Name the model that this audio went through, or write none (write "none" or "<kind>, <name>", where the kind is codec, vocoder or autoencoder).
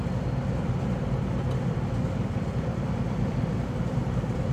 vocoder, BigVGAN v2